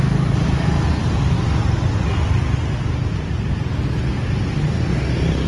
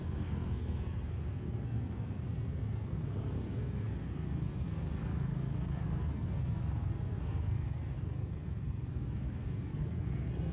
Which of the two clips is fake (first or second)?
second